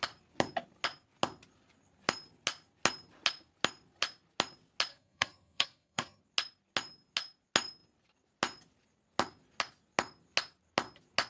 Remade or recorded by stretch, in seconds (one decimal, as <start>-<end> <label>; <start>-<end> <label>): 0.0-4.9 recorded; 4.9-6.2 remade; 6.2-11.3 recorded

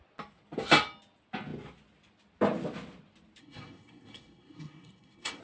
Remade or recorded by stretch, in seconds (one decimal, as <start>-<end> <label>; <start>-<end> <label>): 0.0-3.4 recorded; 3.4-5.4 remade

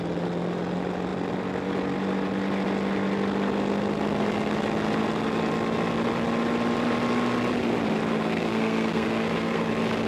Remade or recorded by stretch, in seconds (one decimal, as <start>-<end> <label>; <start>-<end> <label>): 0.0-8.1 recorded; 8.1-9.7 remade; 9.7-10.1 recorded

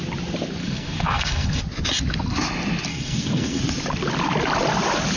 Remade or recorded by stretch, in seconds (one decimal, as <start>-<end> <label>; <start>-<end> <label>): 0.0-0.6 recorded; 0.6-1.6 remade; 1.6-2.9 recorded; 2.9-3.6 remade; 3.6-5.2 recorded

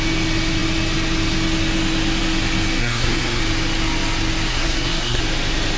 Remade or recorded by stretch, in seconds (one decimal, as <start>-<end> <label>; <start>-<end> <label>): 0.0-2.8 recorded; 2.8-3.4 remade; 3.4-4.5 recorded; 4.5-5.2 remade; 5.2-5.8 recorded